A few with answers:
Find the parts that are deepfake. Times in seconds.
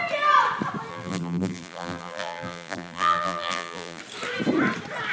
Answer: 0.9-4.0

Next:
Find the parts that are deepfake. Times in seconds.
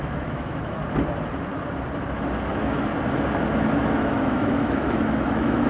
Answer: 0.0-0.8; 2.5-2.9; 3.8-5.7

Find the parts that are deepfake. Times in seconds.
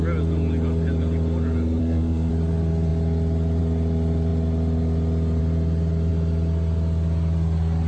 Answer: 1.8-2.3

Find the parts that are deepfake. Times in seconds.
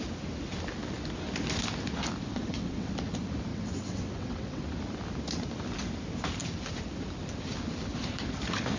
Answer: 2.3-2.9; 3.5-4.6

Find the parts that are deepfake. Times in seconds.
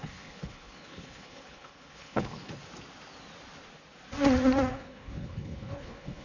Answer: 0.0-2.6; 4.7-6.2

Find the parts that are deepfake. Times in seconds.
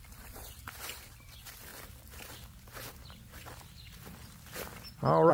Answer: 0.0-1.7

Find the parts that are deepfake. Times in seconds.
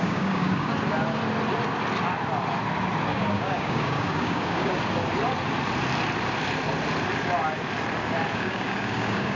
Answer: 0.0-0.7; 3.1-4.7; 8.3-9.4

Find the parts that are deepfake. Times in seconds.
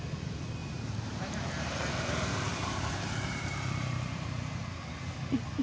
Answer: 0.6-1.4; 2.6-4.6